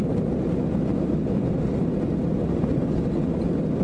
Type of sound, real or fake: real